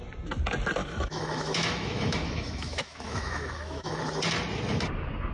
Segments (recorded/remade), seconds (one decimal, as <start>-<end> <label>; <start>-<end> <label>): 0.0-0.8 recorded; 0.8-4.0 remade; 4.0-5.3 recorded